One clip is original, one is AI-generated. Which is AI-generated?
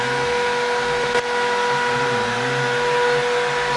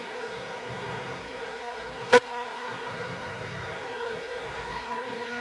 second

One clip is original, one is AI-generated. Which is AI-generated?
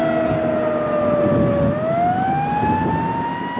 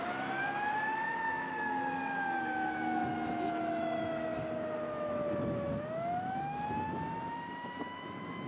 second